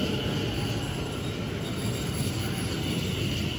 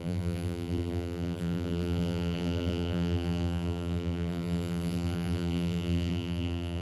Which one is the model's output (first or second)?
second